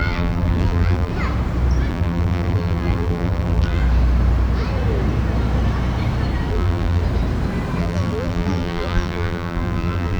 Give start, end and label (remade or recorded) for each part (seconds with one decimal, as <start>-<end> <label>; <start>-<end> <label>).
0.0-1.1 remade; 1.1-1.9 recorded; 1.9-3.8 remade; 3.8-6.5 recorded; 6.5-7.0 remade; 7.0-7.8 recorded; 7.8-10.2 remade